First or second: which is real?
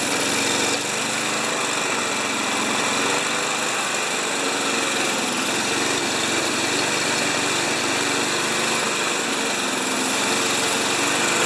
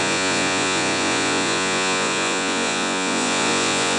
first